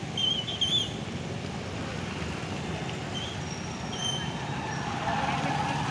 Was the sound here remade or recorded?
recorded